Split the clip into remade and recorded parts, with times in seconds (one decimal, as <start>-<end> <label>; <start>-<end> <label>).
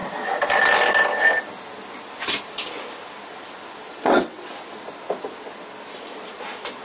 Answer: 0.0-3.9 recorded; 3.9-4.5 remade; 4.5-6.8 recorded